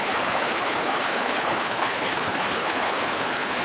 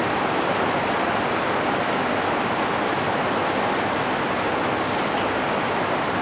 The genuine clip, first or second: second